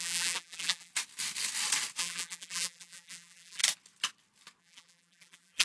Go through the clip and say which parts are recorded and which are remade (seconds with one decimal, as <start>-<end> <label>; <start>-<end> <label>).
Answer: 0.0-0.9 remade; 0.9-2.0 recorded; 2.0-3.6 remade; 3.6-4.6 recorded; 4.6-5.6 remade